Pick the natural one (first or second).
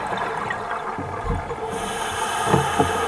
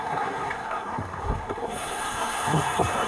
first